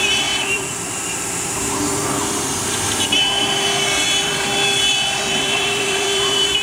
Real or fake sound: fake